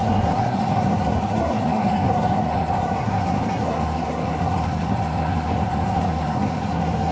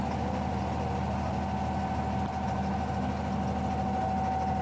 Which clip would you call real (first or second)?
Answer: second